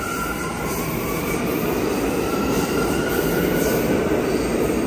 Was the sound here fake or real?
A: real